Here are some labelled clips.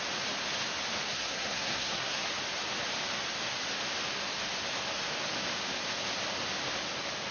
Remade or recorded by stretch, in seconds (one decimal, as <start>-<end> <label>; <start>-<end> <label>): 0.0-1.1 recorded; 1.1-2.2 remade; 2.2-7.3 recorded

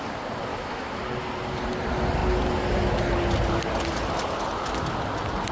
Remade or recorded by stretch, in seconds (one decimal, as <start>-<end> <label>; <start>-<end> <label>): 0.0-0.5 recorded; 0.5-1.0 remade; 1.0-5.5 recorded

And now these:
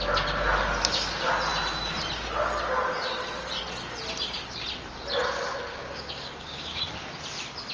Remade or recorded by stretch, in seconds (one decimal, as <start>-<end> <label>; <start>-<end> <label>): 0.0-5.7 recorded; 5.7-6.8 remade; 6.8-7.7 recorded

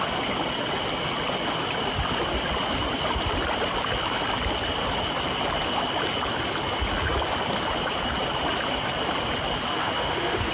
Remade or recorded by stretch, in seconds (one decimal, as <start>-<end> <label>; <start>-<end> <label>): 0.0-9.7 recorded; 9.7-10.5 remade

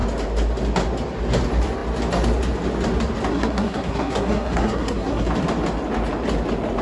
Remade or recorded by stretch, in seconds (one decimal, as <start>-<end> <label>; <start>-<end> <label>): 0.0-3.3 recorded; 3.3-5.3 remade; 5.3-6.8 recorded

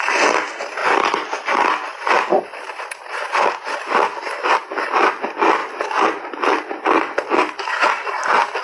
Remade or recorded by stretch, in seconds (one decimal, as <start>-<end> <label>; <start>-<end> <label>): 0.0-8.6 recorded